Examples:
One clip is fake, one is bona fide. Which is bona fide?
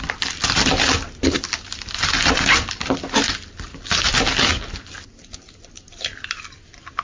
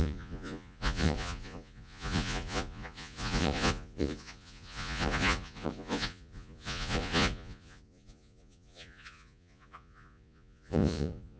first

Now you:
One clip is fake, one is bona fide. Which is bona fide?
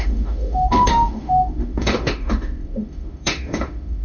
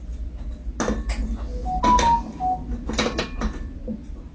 second